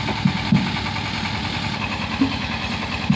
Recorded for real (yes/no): yes